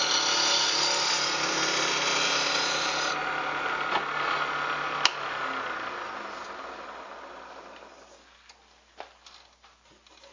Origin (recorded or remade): recorded